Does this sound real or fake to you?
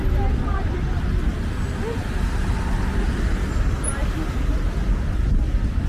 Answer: real